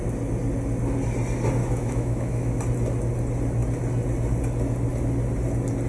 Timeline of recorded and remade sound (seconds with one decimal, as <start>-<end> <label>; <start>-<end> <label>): 0.0-1.6 recorded; 1.6-2.6 remade; 2.6-5.9 recorded